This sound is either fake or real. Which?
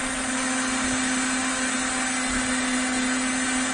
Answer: real